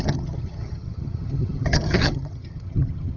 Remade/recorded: remade